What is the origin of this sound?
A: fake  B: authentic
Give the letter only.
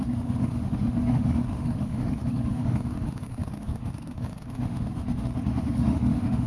A